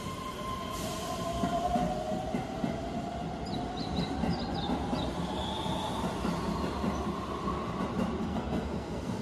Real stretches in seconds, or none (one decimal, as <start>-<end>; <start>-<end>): 0.0-8.2